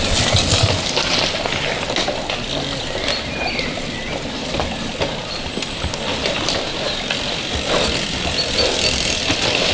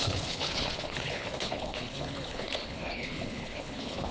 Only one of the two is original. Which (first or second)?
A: first